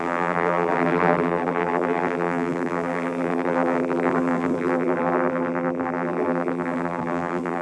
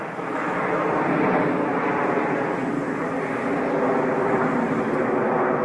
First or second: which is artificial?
first